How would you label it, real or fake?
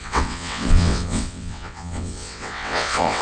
fake